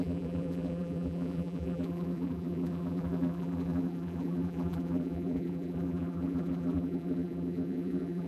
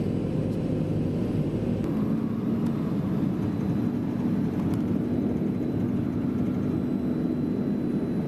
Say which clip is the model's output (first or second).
first